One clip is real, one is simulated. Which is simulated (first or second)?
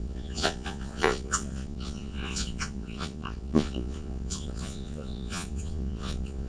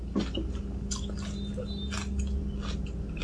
first